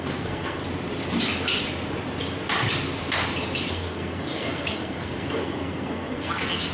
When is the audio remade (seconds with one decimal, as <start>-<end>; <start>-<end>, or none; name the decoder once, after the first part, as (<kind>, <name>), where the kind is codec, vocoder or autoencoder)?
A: 0.0-0.6 (codec, SNAC); 3.7-6.7